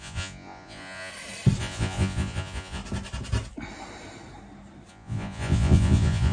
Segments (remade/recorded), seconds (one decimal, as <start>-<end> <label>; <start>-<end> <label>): 0.0-1.1 remade; 1.1-1.6 recorded; 1.6-2.8 remade; 2.8-4.9 recorded; 4.9-6.3 remade